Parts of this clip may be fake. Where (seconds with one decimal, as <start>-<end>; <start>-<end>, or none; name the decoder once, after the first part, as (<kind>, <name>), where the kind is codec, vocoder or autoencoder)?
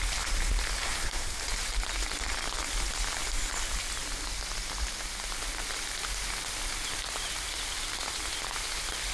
0.8-1.4 (codec, SNAC)